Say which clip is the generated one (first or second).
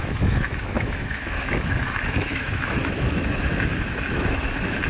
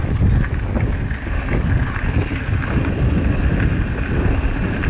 first